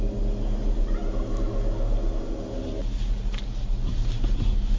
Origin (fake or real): real